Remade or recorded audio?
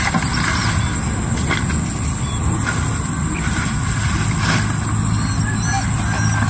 recorded